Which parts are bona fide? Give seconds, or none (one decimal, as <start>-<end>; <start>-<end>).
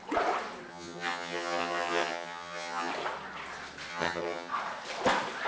0.0-0.7; 2.9-3.9; 4.5-5.5